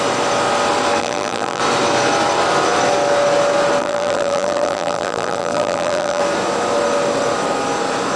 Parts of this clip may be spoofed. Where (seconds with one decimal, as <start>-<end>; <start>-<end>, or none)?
1.0-1.6; 3.8-6.2